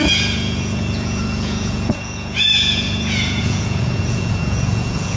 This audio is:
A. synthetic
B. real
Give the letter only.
A